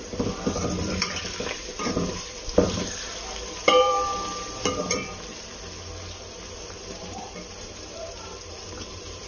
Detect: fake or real fake